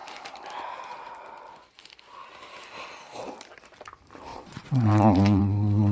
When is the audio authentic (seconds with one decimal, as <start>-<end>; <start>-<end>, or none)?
0.0-4.3; 5.4-5.9